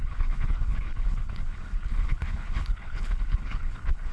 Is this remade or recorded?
remade